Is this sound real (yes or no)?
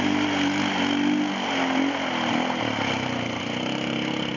yes